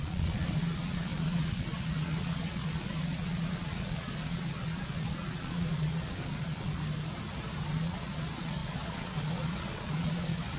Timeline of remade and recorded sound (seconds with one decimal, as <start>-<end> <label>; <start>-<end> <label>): 0.0-6.8 remade; 6.8-7.7 recorded; 7.7-10.6 remade